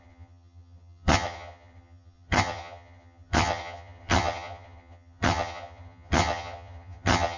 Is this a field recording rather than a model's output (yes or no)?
no